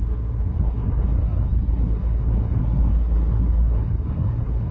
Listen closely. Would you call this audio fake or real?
fake